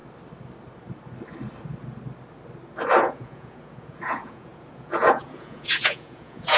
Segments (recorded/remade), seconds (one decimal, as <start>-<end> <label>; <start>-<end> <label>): 0.0-3.0 recorded; 3.0-6.6 remade